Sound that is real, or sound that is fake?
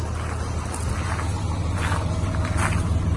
real